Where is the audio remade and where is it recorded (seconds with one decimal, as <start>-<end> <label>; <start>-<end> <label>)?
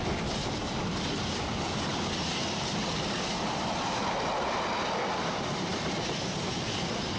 0.0-7.2 recorded